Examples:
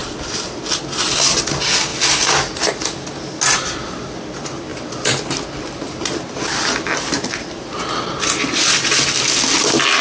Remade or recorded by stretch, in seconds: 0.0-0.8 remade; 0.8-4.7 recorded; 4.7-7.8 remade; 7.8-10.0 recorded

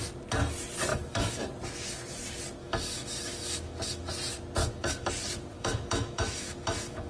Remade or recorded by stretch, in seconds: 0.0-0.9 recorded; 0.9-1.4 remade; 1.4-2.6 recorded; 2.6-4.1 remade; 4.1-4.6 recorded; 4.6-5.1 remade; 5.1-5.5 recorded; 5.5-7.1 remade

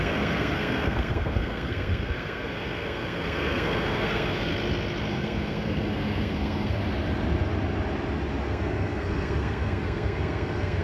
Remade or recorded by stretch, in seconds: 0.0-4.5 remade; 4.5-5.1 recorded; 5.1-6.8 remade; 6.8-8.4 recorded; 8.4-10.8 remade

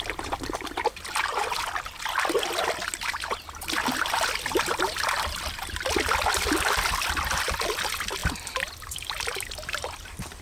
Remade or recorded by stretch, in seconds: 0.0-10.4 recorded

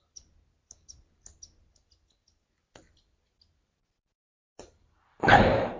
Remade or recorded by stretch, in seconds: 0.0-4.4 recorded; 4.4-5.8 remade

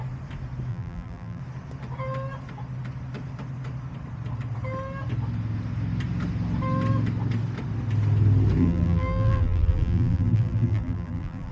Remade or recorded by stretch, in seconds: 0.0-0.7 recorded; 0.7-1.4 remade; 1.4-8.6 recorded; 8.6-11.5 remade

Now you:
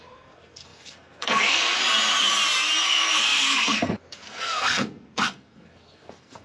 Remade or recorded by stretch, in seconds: 0.0-1.8 remade; 1.8-2.8 recorded; 2.8-6.4 remade